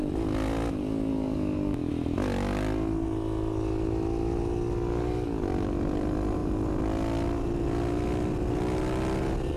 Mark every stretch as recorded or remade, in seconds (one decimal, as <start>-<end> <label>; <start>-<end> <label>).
0.0-1.1 recorded; 1.1-1.9 remade; 1.9-9.6 recorded